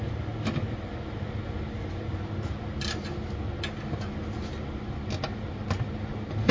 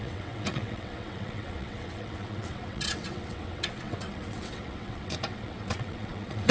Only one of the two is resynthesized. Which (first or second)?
second